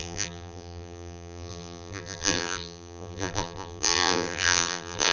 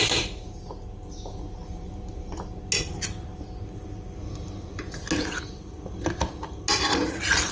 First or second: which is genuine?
second